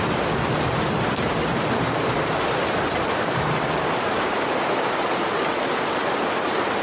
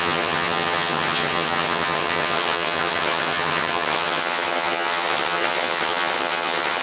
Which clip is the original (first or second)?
first